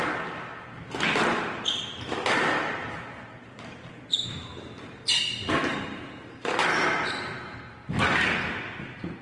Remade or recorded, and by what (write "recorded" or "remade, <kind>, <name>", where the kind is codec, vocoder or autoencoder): recorded